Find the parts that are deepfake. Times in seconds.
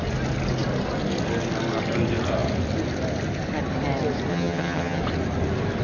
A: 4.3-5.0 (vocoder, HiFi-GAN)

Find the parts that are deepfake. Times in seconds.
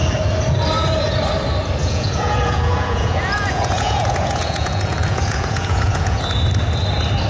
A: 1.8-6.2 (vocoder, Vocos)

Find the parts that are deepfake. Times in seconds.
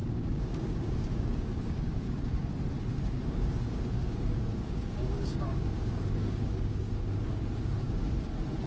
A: 0.0-2.5 (codec, DAC); 2.9-8.1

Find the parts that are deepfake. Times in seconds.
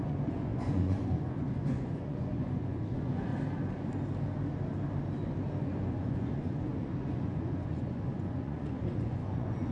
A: 0.0-3.3 (vocoder, Vocos); 5.6-9.7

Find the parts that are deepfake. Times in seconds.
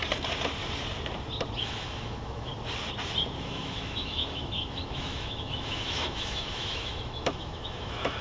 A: 1.6-2.5 (autoencoder, DAC-VAE); 3.4-8.2